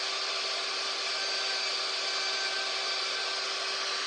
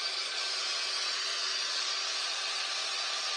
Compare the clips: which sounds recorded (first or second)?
first